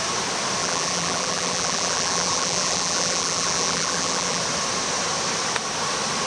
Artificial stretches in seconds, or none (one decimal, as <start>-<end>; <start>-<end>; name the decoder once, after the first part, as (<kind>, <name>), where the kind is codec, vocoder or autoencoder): 0.6-4.4 (vocoder, BigVGAN v2)